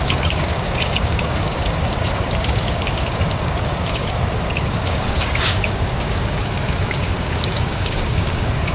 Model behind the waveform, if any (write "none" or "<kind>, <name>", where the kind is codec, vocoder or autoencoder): codec, DAC